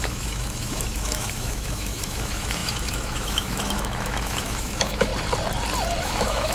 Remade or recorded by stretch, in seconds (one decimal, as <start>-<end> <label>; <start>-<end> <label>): 0.0-5.1 remade; 5.1-6.0 recorded; 6.0-6.5 remade